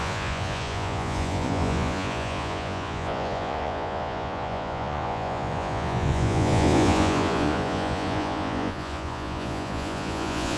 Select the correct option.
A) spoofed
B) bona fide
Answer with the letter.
A